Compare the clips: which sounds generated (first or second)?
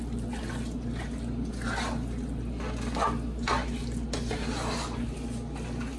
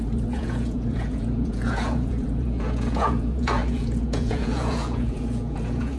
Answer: second